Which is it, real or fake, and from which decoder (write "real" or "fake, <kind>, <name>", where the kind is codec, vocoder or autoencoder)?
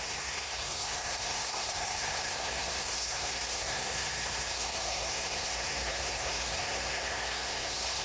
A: fake, codec, SNAC